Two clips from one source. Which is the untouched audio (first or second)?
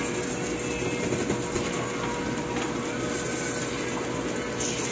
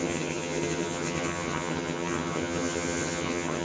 first